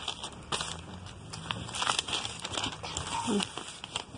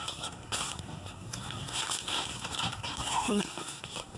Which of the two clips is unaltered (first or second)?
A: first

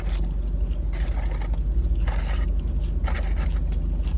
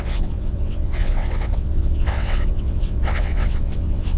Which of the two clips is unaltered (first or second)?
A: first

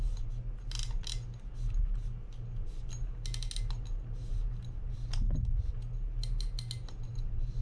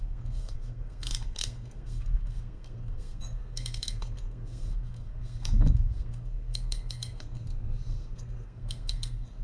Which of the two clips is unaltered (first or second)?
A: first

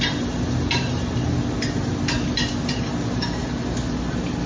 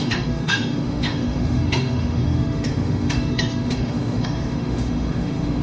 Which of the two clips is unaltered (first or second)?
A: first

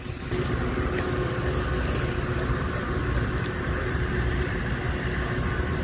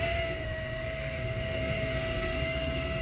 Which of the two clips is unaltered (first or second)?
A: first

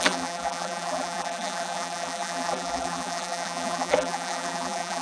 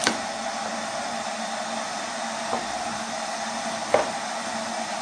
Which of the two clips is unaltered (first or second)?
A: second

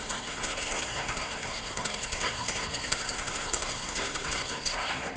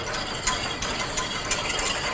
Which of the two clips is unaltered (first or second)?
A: second